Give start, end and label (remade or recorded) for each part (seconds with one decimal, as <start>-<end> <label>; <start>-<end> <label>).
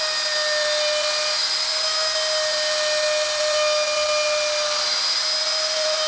0.0-6.1 recorded